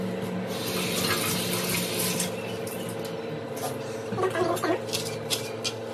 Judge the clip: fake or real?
real